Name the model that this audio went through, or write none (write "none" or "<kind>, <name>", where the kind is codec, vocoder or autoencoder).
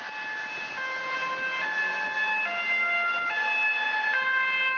none